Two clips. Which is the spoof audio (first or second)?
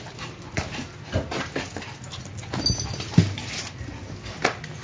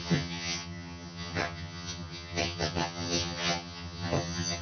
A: second